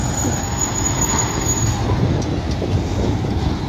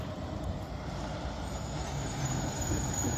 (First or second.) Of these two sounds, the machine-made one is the second